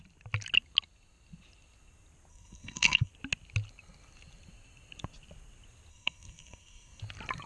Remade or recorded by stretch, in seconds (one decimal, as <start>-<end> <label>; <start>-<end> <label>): 0.0-2.3 recorded; 2.3-3.1 remade; 3.1-5.9 recorded; 5.9-7.0 remade; 7.0-7.5 recorded